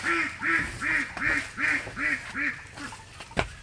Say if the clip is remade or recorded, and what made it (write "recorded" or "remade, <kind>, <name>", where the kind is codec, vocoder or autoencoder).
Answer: recorded